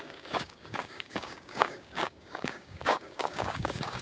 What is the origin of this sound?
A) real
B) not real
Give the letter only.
B